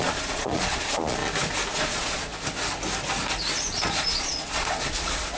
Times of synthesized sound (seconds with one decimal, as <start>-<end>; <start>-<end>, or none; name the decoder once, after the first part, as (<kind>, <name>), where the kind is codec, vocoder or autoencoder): 0.0-1.2 (vocoder, Vocos); 1.7-2.3; 3.6-5.4